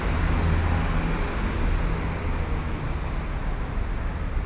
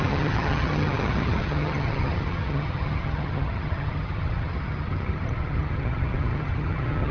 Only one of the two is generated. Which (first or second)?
second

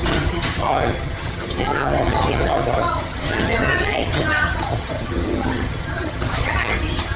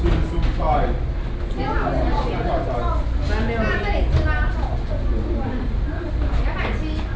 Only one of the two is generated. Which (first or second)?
first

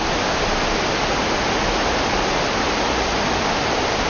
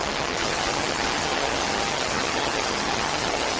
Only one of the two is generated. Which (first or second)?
second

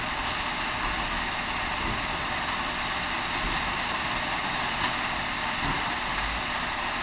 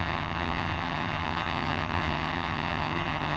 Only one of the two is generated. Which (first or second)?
second